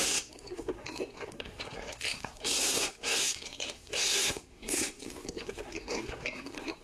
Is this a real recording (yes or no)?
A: no